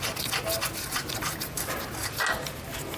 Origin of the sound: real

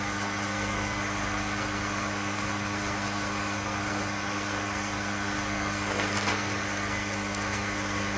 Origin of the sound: fake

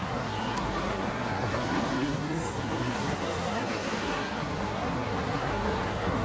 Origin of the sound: fake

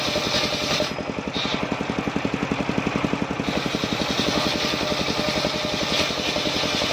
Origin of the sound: real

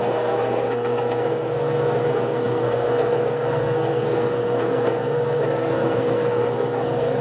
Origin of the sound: fake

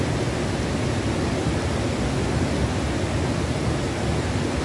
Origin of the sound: real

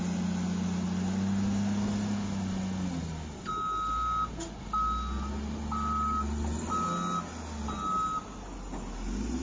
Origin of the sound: real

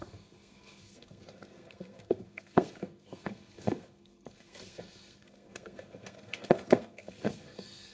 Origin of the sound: fake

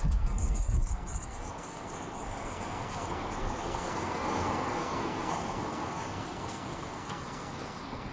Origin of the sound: fake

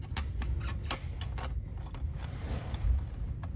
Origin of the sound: real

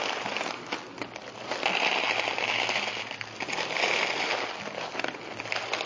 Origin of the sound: real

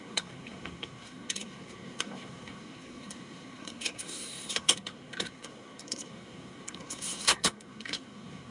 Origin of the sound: fake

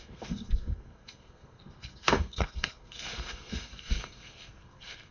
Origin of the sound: fake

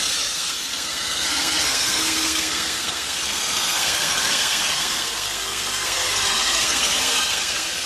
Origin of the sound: fake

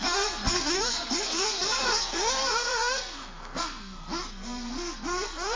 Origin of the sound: fake